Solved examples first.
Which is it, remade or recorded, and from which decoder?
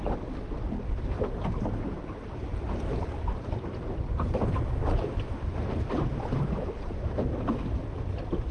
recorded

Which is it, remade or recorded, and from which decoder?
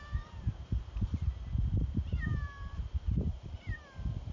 remade, vocoder, BigVGAN v2